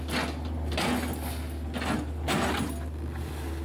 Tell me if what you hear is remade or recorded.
recorded